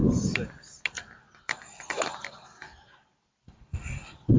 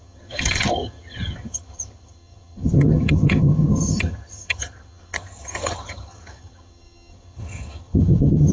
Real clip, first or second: first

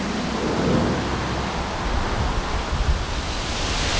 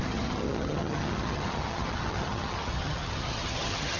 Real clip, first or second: first